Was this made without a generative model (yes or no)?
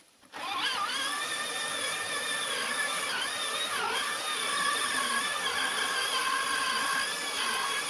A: yes